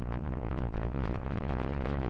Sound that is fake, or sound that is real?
fake